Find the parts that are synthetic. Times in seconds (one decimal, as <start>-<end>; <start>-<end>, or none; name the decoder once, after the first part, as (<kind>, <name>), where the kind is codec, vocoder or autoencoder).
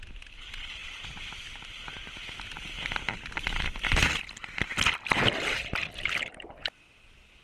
none